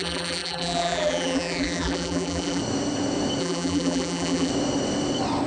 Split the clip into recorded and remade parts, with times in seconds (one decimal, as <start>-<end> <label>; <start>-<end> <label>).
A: 0.0-2.6 remade; 2.6-3.4 recorded; 3.4-4.5 remade; 4.5-5.5 recorded